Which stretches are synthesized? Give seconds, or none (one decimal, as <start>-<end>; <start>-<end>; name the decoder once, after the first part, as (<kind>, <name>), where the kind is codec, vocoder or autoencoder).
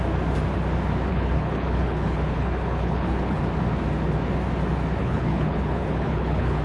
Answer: 1.1-3.4 (codec, HILCodec); 5.0-6.6